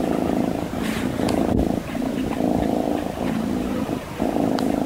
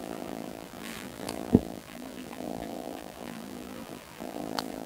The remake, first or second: second